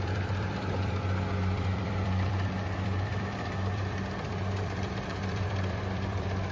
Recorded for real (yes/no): no